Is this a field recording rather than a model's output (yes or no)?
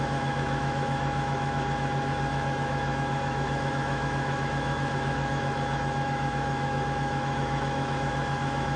no